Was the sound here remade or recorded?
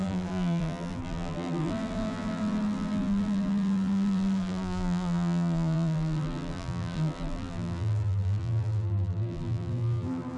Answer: remade